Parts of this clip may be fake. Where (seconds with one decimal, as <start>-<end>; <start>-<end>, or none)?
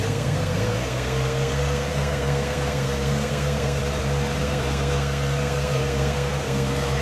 0.0-3.8; 4.4-7.0